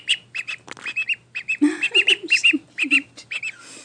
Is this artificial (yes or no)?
no